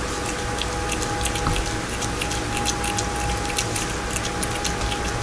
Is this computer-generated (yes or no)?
no